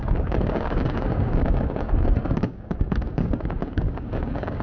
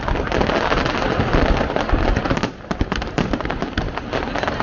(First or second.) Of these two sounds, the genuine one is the second